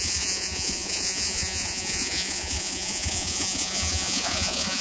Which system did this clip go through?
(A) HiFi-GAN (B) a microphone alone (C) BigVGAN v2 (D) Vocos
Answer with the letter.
D